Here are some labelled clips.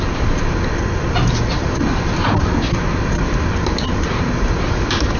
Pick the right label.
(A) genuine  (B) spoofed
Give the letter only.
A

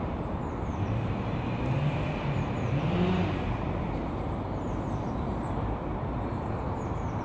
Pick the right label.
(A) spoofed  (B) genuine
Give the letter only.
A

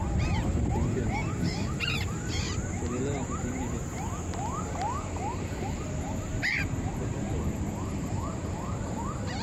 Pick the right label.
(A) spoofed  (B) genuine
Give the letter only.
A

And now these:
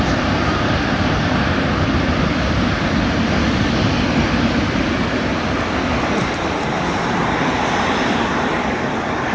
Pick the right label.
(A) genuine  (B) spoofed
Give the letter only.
B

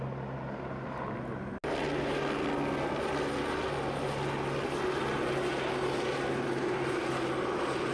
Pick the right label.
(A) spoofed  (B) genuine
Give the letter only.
B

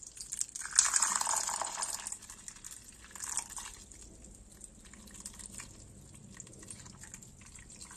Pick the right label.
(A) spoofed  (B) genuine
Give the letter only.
B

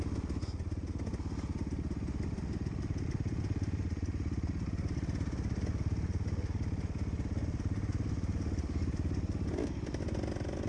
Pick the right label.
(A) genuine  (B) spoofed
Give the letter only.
A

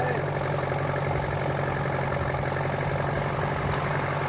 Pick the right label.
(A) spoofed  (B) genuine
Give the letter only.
B